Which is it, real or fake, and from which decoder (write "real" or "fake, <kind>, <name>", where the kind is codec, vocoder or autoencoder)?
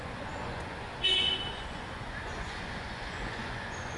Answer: fake, vocoder, Vocos